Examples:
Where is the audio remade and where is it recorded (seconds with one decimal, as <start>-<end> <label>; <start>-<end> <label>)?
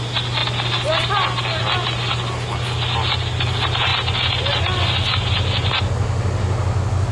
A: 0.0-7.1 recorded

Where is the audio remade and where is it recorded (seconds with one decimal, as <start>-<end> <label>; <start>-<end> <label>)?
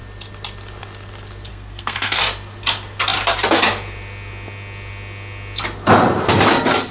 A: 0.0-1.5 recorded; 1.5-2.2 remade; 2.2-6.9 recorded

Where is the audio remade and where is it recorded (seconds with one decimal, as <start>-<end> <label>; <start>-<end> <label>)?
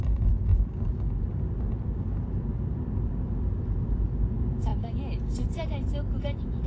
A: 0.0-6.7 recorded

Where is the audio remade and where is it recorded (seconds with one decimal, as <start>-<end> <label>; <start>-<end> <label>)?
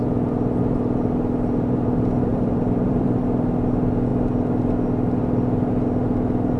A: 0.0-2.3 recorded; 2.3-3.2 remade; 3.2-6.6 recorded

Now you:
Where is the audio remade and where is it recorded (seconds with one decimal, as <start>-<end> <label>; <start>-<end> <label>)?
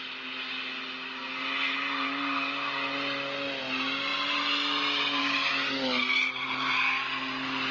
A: 0.0-7.7 recorded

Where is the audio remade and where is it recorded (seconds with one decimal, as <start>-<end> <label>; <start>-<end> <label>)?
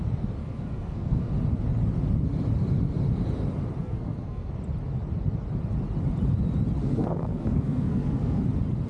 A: 0.0-0.4 recorded; 0.4-1.3 remade; 1.3-3.8 recorded; 3.8-4.5 remade; 4.5-6.8 recorded; 6.8-8.4 remade; 8.4-8.9 recorded